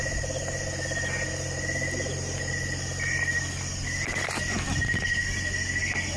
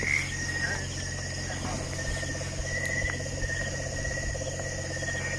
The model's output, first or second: first